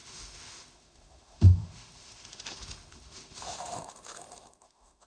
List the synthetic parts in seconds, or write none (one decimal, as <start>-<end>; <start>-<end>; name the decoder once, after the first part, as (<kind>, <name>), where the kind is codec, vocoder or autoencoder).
0.0-5.1 (autoencoder, DAC-VAE)

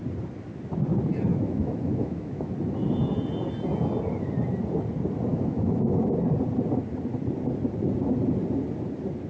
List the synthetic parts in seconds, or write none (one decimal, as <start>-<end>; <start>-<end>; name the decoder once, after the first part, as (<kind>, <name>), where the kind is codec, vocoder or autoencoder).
1.3-2.5 (autoencoder, DAC-VAE); 5.3-6.0

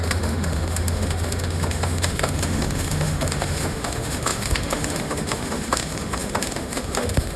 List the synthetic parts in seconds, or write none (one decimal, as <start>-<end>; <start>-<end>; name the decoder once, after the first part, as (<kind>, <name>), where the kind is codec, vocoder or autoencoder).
0.0-7.4 (autoencoder, DAC-VAE)

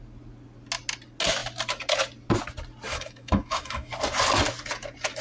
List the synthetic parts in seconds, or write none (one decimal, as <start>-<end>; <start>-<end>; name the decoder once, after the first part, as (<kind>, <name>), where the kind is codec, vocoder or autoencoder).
2.9-3.9 (autoencoder, DAC-VAE)

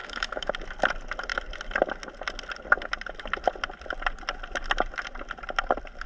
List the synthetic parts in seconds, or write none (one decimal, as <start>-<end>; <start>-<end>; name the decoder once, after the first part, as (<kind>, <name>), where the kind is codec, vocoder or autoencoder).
0.0-0.5 (autoencoder, DAC-VAE)

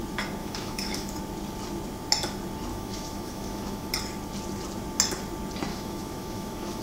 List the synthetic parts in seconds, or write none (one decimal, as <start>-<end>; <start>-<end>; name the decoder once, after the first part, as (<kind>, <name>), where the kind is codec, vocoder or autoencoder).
0.4-1.2 (autoencoder, DAC-VAE); 2.7-3.9; 5.7-6.8

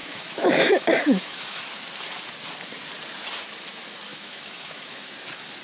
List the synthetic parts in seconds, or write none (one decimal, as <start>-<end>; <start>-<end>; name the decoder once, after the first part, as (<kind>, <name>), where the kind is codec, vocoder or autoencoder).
0.0-1.6 (autoencoder, DAC-VAE); 4.1-5.1

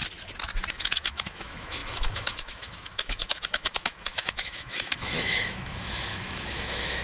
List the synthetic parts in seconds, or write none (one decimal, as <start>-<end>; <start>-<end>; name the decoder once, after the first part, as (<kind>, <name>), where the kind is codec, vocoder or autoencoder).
0.7-7.0 (autoencoder, DAC-VAE)